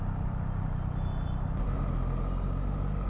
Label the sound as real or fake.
real